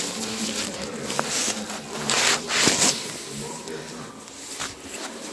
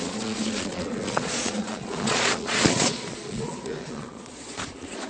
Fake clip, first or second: second